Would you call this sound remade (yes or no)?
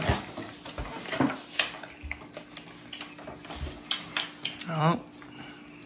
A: no